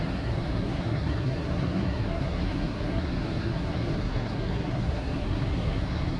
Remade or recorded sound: remade